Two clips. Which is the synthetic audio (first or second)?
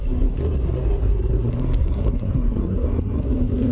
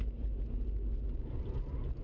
first